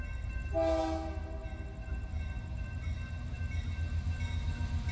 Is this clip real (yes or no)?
yes